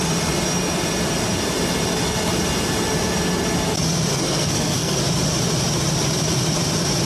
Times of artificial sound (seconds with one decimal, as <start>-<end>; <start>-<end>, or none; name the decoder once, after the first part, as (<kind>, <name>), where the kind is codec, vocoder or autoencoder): 4.1-5.0 (codec, SNAC)